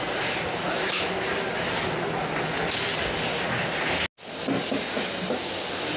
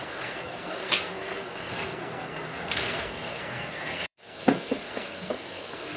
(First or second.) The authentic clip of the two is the first